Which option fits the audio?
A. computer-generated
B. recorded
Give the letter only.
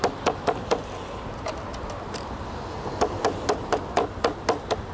B